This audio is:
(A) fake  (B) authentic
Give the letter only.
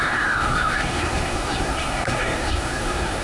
A